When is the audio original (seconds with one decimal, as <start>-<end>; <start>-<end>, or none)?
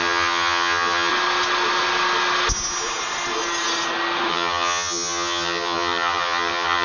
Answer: 1.1-4.3